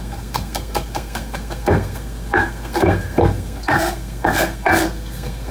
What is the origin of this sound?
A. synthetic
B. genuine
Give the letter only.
A